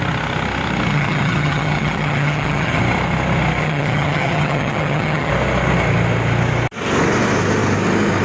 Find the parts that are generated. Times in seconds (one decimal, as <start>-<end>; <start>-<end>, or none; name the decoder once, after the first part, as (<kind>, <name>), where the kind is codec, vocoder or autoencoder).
0.9-2.8 (vocoder, HiFi-GAN); 3.6-5.3